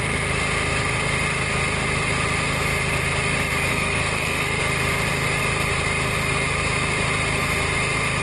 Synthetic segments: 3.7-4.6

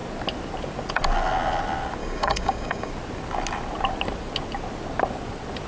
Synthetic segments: 2.0-2.9

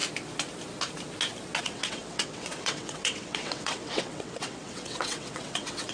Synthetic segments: 1.6-5.9

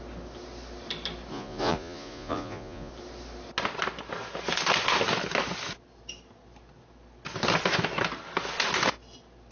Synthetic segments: 1.3-2.9

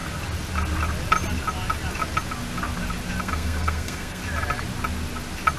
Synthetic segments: 3.2-4.2

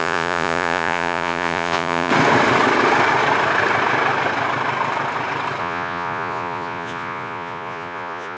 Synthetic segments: 0.0-2.1; 5.6-8.4

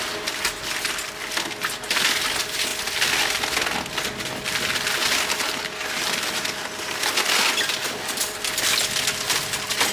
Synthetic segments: none